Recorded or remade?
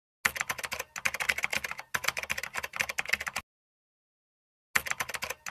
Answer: recorded